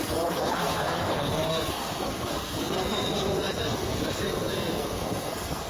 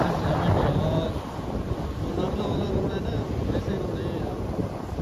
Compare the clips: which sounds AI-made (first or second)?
first